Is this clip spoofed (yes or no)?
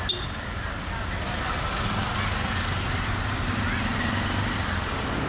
no